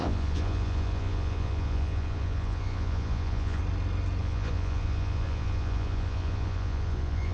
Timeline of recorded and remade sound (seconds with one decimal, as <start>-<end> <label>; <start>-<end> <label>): 0.0-3.6 remade; 3.6-4.2 recorded; 4.2-7.3 remade